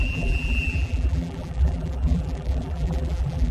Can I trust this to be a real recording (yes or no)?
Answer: no